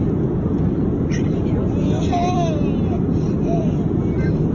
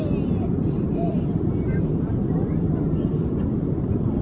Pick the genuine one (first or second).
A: first